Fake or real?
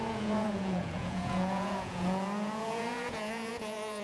fake